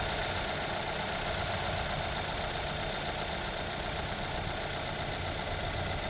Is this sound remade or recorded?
recorded